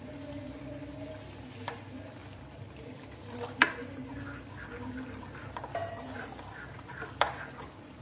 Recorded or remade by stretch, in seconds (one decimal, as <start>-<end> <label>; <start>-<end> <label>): 0.0-2.2 recorded; 2.2-3.7 remade; 3.7-5.8 recorded; 5.8-6.7 remade; 6.7-8.0 recorded